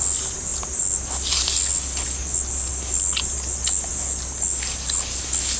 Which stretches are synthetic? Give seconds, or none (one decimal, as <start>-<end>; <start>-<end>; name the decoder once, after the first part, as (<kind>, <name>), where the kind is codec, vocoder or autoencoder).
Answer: none